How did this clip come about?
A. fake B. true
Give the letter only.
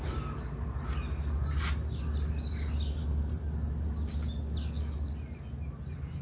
B